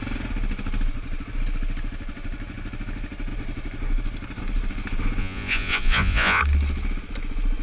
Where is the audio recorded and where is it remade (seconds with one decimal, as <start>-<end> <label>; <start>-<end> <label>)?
0.0-5.2 recorded; 5.2-6.4 remade; 6.4-7.6 recorded